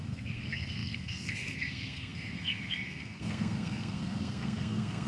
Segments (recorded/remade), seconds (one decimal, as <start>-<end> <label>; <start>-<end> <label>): 0.0-5.1 remade